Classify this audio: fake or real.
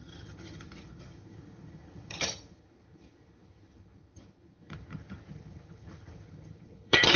fake